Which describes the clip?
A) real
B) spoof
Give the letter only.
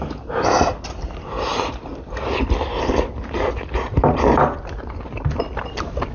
A